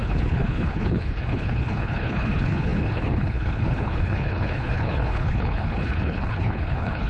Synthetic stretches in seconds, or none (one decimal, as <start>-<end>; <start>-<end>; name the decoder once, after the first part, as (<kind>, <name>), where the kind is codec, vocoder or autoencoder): 0.0-7.1 (codec, HILCodec)